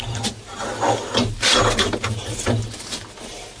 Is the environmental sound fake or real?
real